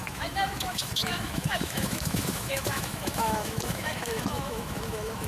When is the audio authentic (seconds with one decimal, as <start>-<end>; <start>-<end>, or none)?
none